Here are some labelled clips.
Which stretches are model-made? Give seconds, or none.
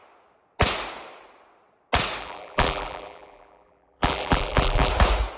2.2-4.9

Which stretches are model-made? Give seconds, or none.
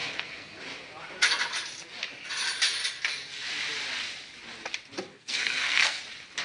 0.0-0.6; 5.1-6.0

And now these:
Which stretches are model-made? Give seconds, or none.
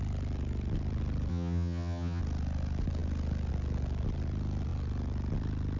1.3-2.2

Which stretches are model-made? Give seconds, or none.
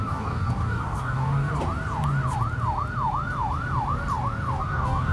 0.0-1.5; 4.6-5.1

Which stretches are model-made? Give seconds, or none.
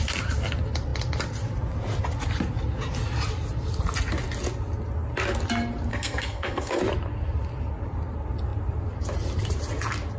5.9-6.8